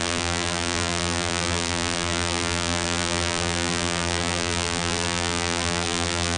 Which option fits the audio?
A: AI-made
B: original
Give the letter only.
A